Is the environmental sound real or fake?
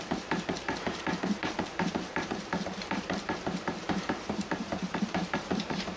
fake